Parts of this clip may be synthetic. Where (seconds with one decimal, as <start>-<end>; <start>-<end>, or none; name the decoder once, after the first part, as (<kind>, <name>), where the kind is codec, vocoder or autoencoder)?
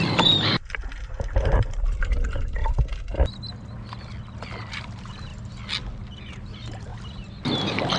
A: 0.0-2.6 (vocoder, BigVGAN v2); 4.7-5.3; 5.9-6.9; 7.6-8.0